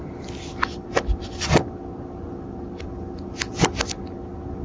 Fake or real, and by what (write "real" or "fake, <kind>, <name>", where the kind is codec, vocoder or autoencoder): real